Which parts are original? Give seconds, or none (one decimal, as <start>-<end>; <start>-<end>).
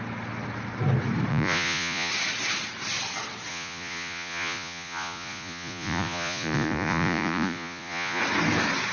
0.0-1.3; 2.1-3.5; 8.2-8.9